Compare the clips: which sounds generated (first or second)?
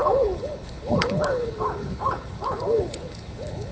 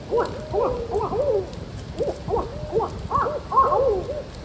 first